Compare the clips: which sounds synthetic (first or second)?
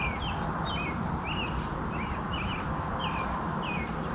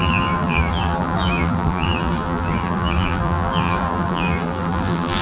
second